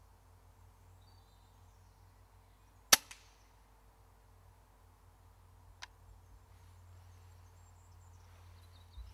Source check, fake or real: real